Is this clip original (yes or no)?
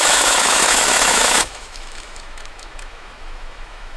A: no